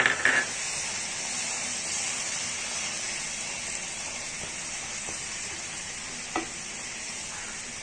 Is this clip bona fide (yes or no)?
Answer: yes